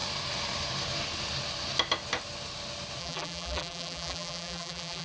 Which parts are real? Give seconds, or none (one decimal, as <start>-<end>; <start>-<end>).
0.0-3.0